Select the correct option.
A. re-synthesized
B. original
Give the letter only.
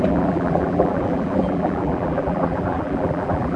A